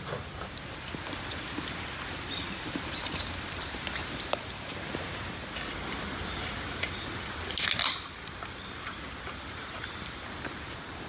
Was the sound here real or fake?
fake